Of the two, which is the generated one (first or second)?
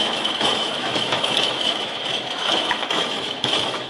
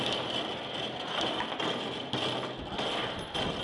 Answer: first